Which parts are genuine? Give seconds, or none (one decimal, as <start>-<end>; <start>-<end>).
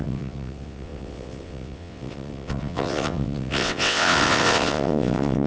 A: none